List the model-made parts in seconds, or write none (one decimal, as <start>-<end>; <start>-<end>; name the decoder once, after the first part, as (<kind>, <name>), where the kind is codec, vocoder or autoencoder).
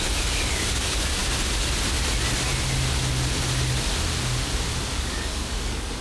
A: 0.0-1.2 (codec, DAC); 4.8-6.0